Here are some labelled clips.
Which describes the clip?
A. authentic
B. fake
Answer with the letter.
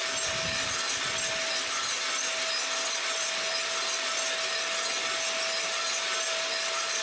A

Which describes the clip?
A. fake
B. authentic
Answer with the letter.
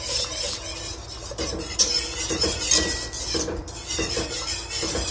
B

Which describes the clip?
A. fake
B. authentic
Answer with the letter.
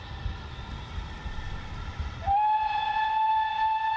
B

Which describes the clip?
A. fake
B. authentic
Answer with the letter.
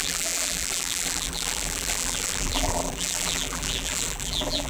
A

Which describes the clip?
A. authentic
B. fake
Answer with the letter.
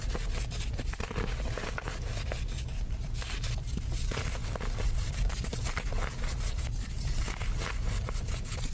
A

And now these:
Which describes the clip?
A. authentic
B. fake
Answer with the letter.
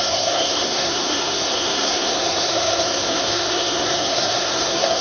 B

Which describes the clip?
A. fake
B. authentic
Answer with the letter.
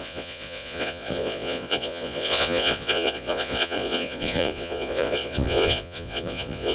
A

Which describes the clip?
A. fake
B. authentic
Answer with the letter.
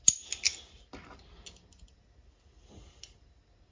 B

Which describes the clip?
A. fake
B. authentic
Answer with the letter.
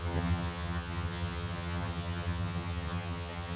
A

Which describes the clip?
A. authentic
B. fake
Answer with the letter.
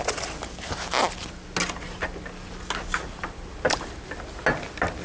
A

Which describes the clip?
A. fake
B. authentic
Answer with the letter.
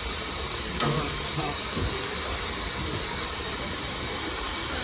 A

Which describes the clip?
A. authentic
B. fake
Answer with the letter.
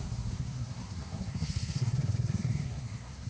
B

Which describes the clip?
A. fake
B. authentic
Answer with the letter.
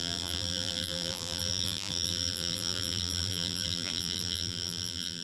A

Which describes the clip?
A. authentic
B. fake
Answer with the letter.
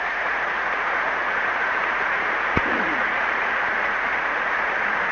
B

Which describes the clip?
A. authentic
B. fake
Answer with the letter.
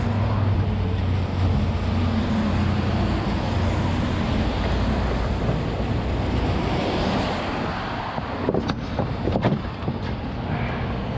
A